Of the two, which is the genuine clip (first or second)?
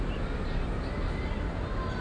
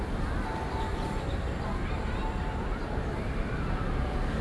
first